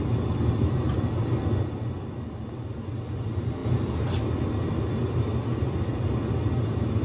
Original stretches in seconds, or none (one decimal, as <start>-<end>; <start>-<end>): 0.0-7.0